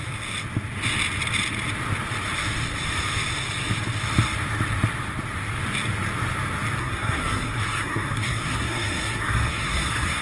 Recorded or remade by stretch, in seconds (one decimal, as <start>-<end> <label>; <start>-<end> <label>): 0.0-6.8 recorded; 6.8-10.2 remade